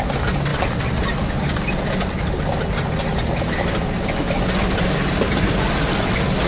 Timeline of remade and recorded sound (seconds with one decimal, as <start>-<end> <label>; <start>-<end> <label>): 0.0-6.5 recorded